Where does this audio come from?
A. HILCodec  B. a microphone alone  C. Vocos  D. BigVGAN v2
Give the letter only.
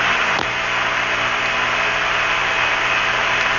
B